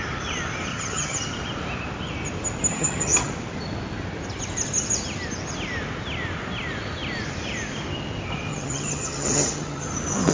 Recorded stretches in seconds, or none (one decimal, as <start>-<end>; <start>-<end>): 0.0-0.7; 1.2-2.7; 3.3-8.5; 9.9-10.3